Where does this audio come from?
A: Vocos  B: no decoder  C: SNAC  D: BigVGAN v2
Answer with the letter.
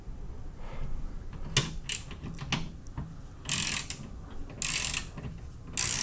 B